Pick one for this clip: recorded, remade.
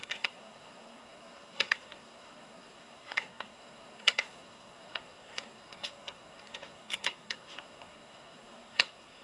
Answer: remade